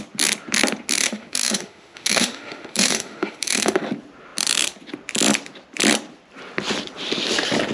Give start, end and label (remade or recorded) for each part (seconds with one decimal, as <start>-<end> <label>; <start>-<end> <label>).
0.0-1.0 recorded; 1.0-3.8 remade; 3.8-7.7 recorded